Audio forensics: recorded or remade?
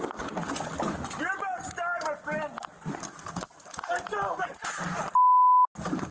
recorded